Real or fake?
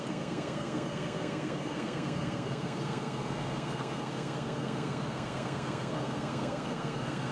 fake